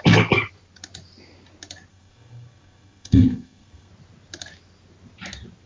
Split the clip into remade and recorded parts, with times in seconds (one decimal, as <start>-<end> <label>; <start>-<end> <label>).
0.0-1.9 recorded; 1.9-3.9 remade; 3.9-5.7 recorded